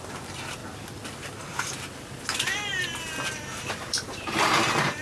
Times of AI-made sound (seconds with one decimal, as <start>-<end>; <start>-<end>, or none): 0.0-0.6; 3.3-5.0